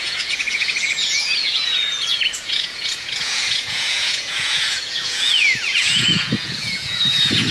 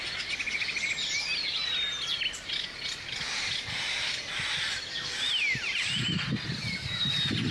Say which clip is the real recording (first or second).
second